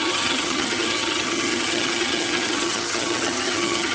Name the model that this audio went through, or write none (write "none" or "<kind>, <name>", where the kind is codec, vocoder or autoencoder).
vocoder, HiFi-GAN